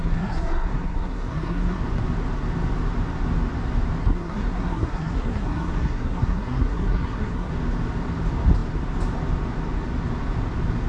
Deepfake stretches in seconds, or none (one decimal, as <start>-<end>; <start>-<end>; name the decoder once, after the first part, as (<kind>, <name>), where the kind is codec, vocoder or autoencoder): 0.0-1.8 (codec, SNAC); 4.0-7.5